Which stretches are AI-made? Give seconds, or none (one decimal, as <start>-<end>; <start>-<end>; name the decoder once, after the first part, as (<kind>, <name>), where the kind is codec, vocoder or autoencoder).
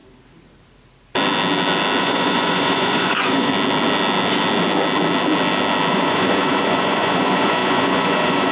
2.0-3.5 (vocoder, Vocos); 5.9-8.5